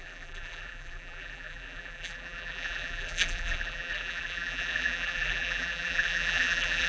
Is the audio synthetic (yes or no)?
yes